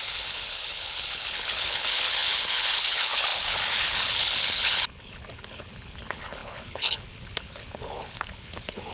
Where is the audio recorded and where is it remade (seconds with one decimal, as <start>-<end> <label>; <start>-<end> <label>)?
0.0-8.9 remade